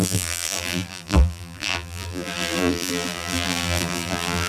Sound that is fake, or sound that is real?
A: fake